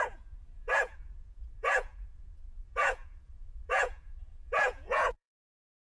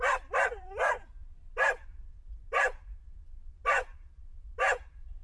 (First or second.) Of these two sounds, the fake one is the first